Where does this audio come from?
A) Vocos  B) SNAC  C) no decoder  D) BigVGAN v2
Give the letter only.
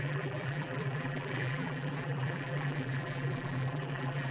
D